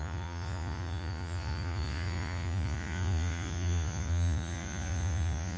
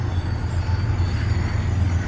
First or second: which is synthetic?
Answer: first